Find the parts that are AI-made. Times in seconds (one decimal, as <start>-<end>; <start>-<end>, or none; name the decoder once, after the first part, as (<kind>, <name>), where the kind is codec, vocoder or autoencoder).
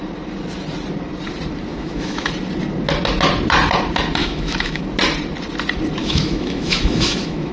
1.7-2.3 (autoencoder, DAC-VAE); 4.2-4.8; 6.0-7.5